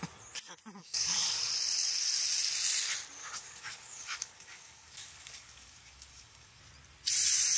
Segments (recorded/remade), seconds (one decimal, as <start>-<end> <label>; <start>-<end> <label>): 0.0-0.8 recorded; 0.8-1.5 remade; 1.5-3.2 recorded; 3.2-6.6 remade; 6.6-7.6 recorded